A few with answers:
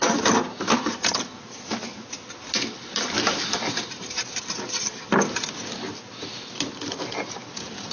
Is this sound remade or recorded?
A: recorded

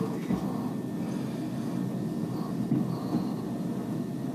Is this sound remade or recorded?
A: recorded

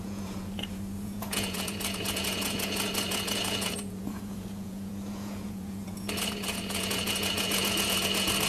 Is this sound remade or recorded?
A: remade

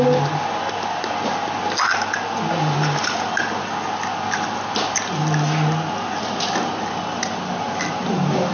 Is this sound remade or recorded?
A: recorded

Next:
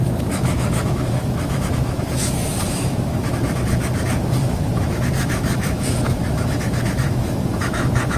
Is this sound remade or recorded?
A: remade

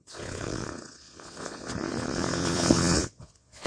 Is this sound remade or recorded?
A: remade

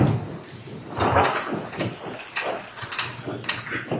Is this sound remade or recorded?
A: recorded